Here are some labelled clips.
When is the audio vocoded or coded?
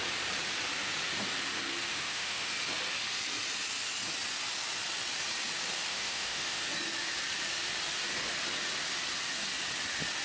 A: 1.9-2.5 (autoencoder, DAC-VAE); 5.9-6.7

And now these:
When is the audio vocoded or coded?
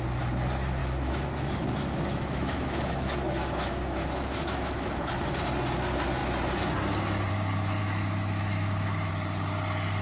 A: 0.8-5.1 (autoencoder, DAC-VAE); 7.8-9.1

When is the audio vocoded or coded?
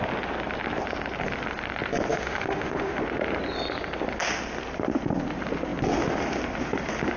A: 2.1-3.0 (autoencoder, DAC-VAE)